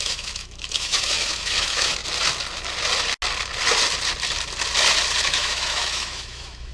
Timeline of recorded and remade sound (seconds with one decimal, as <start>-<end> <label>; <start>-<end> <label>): 0.0-2.0 remade; 2.0-5.2 recorded; 5.2-6.7 remade